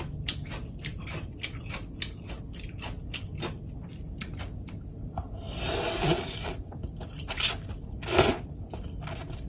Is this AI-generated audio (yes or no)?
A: no